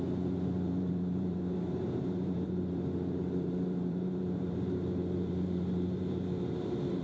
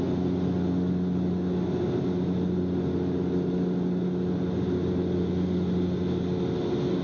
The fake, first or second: first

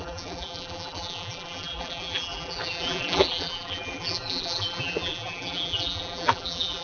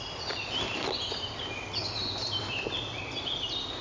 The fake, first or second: first